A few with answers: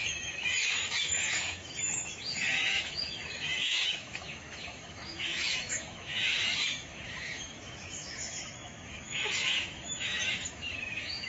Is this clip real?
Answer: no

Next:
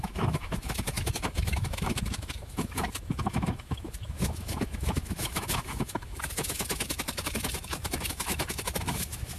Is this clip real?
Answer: no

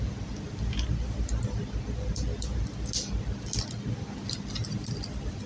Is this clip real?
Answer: yes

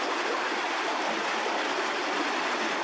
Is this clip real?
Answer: yes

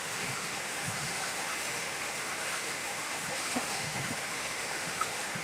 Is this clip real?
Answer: no